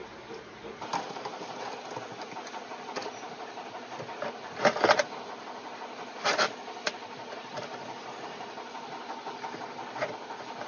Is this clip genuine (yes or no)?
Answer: yes